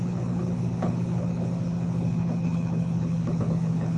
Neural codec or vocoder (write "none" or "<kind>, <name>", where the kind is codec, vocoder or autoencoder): codec, HILCodec